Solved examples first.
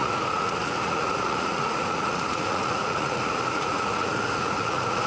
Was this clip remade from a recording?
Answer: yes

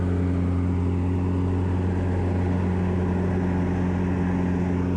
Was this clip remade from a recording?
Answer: no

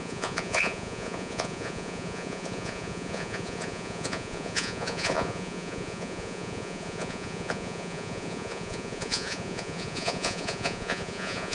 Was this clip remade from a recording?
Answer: yes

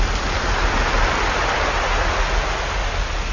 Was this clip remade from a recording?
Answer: no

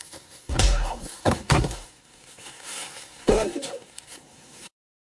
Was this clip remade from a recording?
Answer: yes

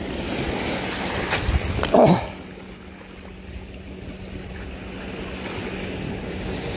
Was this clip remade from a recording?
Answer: no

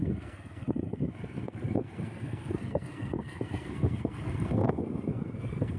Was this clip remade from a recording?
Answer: yes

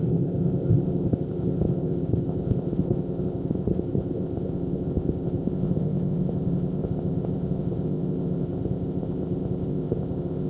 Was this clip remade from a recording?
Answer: yes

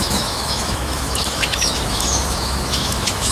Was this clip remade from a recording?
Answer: yes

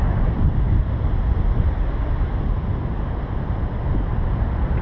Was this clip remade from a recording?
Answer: no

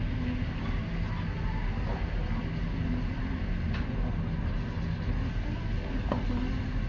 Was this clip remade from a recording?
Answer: no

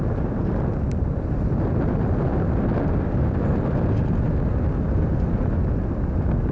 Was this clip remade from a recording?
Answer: no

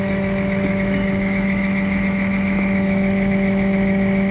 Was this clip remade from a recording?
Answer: yes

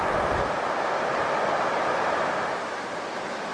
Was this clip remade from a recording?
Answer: no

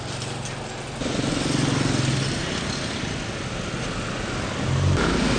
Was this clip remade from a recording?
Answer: no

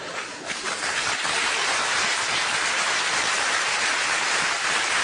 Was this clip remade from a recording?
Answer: yes